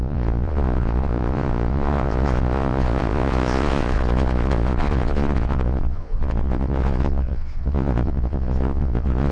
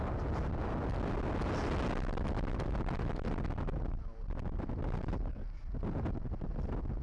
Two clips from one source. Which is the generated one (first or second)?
first